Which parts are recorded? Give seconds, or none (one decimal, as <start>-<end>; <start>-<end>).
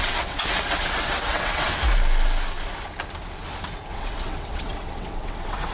1.7-3.9